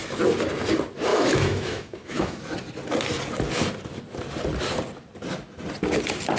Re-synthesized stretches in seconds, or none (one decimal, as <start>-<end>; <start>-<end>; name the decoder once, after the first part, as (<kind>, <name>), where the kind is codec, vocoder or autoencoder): 1.1-2.4 (autoencoder, DAC-VAE)